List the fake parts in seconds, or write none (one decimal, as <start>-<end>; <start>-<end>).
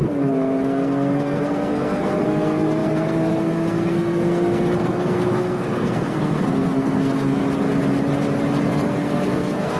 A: 0.0-7.4; 8.6-9.8